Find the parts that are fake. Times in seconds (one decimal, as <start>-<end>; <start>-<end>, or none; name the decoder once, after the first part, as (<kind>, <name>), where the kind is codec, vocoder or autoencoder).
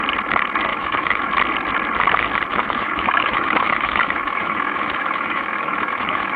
0.7-1.3 (autoencoder, DAC-VAE); 2.5-6.4